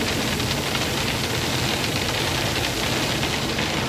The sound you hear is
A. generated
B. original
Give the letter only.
B